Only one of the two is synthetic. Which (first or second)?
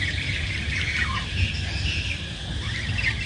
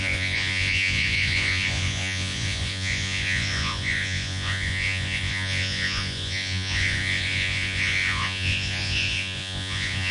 second